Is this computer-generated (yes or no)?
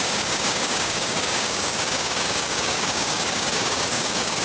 yes